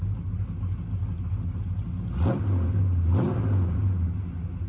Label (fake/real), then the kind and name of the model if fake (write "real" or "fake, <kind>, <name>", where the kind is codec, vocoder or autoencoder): real